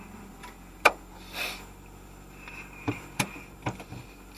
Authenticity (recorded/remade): remade